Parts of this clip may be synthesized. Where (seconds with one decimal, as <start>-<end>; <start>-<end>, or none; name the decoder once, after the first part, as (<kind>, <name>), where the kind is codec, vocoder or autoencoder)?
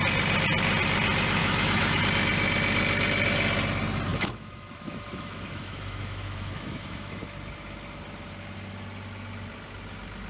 1.4-2.0 (autoencoder, DAC-VAE); 4.1-7.2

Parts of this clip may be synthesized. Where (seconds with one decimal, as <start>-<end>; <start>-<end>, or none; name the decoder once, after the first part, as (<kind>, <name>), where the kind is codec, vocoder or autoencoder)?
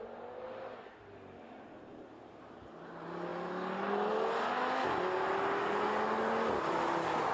none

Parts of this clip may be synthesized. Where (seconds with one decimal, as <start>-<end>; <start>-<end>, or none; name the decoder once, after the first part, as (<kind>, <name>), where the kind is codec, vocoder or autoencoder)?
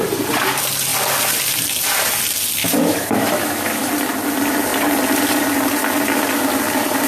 2.6-3.9 (autoencoder, DAC-VAE)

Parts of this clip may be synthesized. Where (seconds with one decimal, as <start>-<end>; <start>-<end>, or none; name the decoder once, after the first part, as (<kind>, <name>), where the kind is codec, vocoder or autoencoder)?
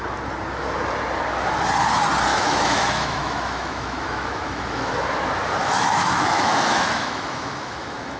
2.3-4.9 (autoencoder, DAC-VAE); 5.6-8.2